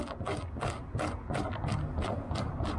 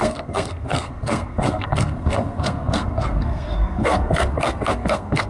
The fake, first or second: second